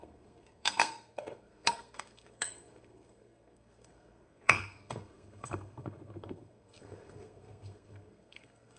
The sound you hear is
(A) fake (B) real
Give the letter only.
A